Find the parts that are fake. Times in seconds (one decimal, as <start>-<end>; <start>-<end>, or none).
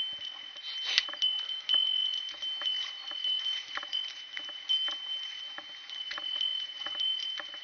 none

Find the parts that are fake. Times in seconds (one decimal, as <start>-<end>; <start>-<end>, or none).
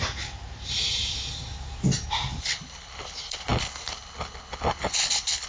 2.4-5.5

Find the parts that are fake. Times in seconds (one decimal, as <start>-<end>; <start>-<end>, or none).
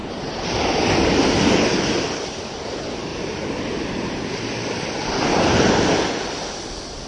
none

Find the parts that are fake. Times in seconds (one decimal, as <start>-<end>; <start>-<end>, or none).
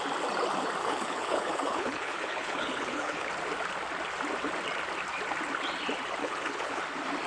0.8-3.3; 6.2-6.8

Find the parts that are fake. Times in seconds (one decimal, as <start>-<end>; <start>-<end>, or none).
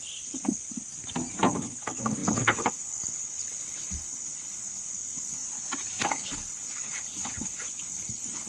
0.0-0.7; 1.5-5.4; 6.0-8.5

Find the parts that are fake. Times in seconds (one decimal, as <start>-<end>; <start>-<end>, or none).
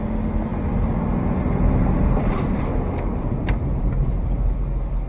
none